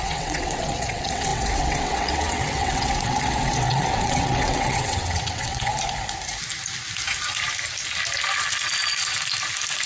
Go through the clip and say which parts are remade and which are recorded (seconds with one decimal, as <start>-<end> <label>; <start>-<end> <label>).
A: 0.0-5.7 remade; 5.7-9.9 recorded